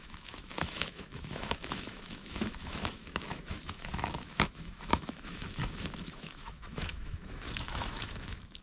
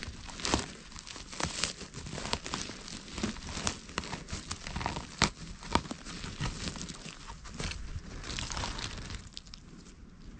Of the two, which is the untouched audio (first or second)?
second